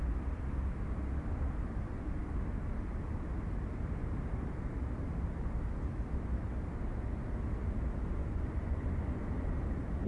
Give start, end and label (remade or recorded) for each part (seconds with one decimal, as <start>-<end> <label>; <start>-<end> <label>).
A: 0.0-8.2 recorded; 8.2-9.2 remade; 9.2-10.1 recorded